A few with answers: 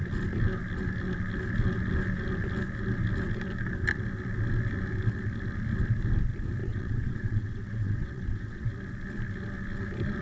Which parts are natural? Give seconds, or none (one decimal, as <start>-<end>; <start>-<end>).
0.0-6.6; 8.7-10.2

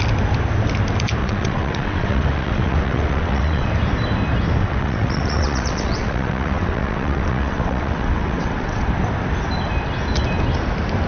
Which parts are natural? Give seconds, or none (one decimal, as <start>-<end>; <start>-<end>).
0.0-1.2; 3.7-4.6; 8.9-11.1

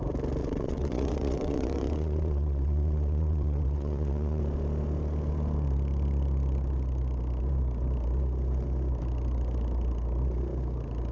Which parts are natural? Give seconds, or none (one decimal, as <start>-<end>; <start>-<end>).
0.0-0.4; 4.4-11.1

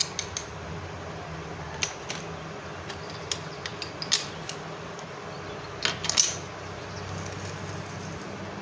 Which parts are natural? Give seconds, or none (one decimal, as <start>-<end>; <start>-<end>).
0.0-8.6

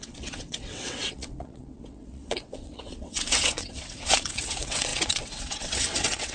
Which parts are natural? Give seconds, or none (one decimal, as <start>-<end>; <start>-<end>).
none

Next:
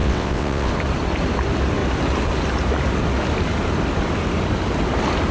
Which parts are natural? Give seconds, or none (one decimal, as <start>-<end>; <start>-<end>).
0.7-5.3

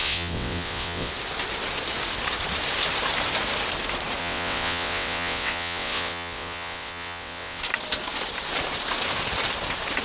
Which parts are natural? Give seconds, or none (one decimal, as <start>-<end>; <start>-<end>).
1.1-4.2; 7.6-10.0

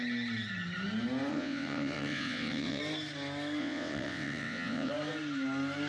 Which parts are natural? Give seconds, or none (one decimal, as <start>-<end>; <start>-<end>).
0.0-1.3; 2.8-3.6; 4.9-5.9